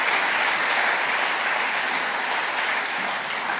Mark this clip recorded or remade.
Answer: recorded